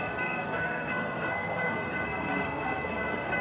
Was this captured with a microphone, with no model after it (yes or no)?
no